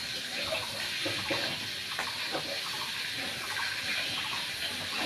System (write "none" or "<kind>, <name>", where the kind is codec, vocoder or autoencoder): none